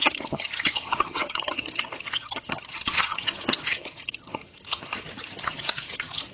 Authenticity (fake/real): fake